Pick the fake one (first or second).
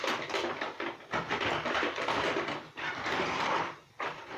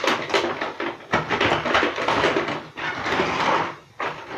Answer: first